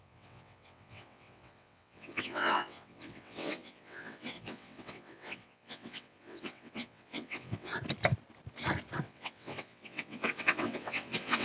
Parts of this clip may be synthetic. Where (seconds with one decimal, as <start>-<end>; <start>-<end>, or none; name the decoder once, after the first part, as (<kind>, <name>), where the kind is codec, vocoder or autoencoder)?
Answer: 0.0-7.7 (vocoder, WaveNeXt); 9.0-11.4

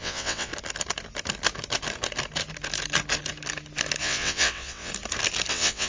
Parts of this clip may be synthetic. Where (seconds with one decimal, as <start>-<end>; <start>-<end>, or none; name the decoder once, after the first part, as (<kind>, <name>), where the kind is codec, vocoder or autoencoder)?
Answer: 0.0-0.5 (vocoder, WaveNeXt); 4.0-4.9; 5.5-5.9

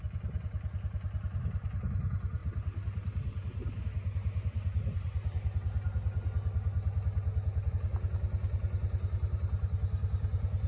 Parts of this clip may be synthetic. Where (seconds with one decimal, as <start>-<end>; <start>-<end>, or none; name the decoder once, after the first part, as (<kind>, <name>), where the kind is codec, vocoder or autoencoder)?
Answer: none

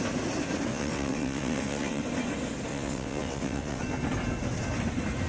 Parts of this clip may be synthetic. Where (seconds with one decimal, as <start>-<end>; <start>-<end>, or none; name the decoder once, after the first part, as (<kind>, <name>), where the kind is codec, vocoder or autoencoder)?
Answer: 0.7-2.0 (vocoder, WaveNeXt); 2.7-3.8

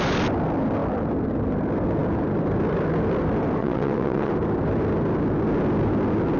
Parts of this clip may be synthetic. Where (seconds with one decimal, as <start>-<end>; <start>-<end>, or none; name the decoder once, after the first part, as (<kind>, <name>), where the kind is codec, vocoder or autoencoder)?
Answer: 3.6-4.3 (vocoder, WaveNeXt)